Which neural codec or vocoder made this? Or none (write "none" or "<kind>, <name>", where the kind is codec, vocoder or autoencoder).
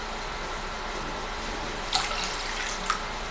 none